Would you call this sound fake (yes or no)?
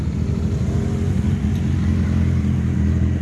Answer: no